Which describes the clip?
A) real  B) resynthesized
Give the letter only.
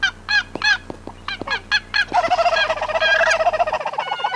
A